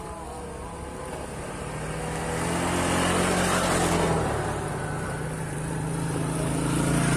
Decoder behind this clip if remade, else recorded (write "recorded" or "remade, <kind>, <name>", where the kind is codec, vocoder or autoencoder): recorded